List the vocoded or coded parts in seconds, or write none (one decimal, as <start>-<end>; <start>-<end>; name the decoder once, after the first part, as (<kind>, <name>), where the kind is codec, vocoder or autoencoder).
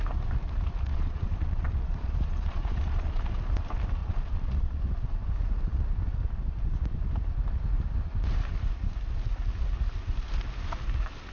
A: 0.9-3.2 (vocoder, Vocos); 4.0-4.8